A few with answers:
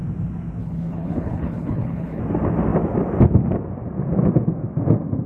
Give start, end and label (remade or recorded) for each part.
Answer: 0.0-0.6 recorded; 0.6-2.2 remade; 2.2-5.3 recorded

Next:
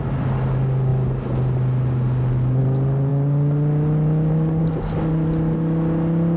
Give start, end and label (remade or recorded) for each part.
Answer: 0.0-6.4 recorded

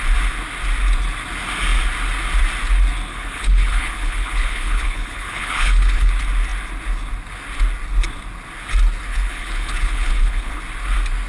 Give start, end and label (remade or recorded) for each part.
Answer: 0.0-3.1 recorded; 3.1-6.1 remade; 6.1-9.1 recorded; 9.1-10.6 remade; 10.6-11.3 recorded

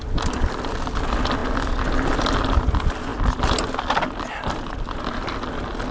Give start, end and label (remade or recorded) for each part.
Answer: 0.0-5.9 recorded

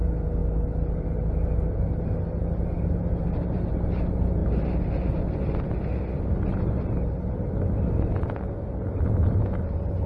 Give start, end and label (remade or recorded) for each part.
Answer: 0.0-10.1 recorded

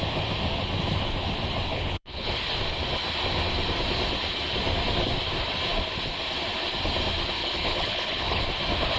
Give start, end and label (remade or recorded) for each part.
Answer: 0.0-1.7 recorded; 1.7-2.3 remade; 2.3-7.4 recorded; 7.4-8.4 remade; 8.4-9.0 recorded

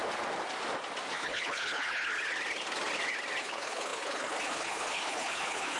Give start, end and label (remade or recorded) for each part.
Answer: 0.0-1.1 recorded; 1.1-2.1 remade; 2.1-3.4 recorded; 3.4-5.8 remade

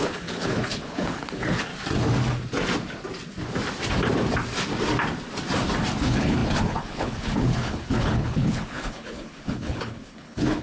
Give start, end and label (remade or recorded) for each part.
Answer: 0.0-1.7 remade; 1.7-6.0 recorded; 6.0-10.6 remade